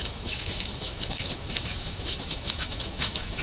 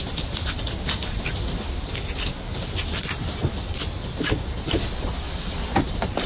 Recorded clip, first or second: second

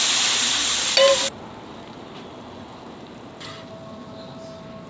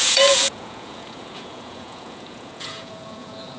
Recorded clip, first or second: first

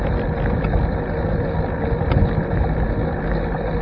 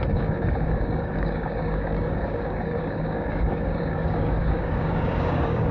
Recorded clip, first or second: first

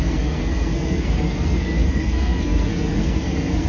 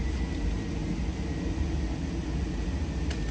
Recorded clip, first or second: second